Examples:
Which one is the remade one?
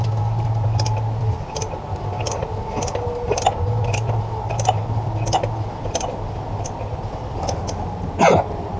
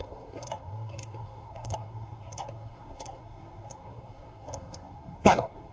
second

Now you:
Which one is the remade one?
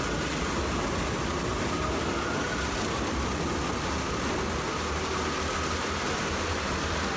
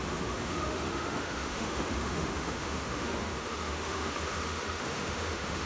second